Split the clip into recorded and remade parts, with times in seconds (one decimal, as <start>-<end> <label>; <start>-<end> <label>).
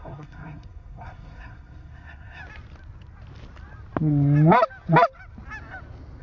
0.0-2.4 remade; 2.4-6.2 recorded